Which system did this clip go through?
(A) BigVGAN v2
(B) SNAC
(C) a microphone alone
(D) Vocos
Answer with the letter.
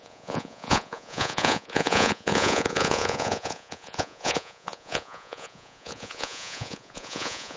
D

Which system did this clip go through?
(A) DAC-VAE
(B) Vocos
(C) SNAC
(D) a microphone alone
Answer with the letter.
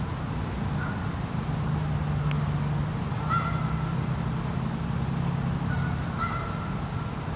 D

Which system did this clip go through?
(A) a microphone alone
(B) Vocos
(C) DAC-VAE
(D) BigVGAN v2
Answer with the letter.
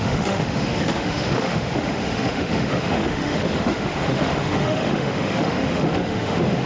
C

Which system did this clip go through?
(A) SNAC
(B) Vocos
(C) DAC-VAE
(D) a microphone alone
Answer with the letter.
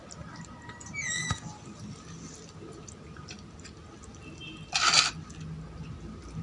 D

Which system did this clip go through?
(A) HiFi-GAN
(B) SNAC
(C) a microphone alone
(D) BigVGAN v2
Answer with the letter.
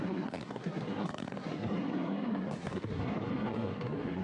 B